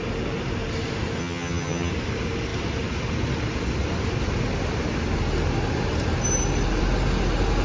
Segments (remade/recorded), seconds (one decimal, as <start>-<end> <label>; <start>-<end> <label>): 0.0-1.2 recorded; 1.2-1.9 remade; 1.9-7.6 recorded